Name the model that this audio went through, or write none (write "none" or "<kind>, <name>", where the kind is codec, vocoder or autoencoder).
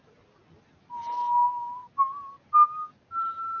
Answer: none